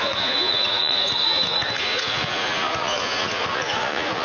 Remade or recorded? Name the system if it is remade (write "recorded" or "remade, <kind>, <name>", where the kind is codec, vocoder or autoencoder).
remade, vocoder, Vocos